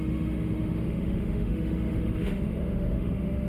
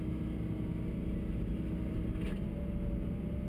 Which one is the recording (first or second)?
second